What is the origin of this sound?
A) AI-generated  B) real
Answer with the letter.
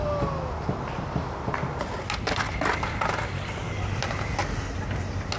B